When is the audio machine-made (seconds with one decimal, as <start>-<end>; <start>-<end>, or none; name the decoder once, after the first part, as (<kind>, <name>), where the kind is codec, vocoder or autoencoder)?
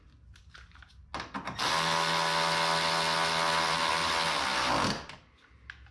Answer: none